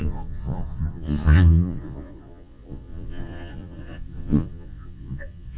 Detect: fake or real fake